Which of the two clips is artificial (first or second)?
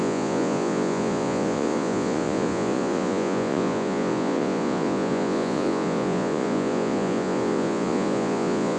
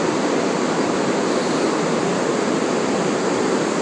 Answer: first